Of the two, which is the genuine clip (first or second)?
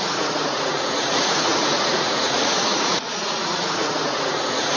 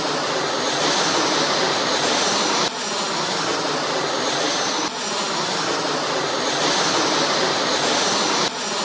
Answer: second